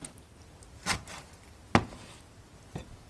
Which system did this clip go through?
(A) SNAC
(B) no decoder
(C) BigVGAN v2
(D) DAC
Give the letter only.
B